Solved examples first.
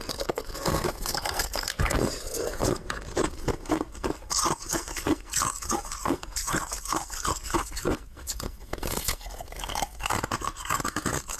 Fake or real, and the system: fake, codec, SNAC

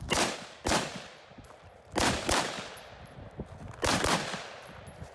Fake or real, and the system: real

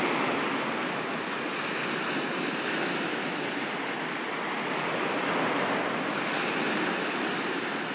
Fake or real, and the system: real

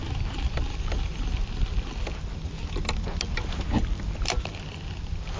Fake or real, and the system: real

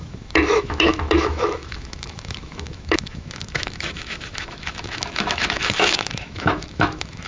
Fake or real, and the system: fake, autoencoder, DAC-VAE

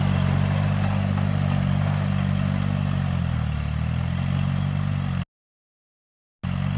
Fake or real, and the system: real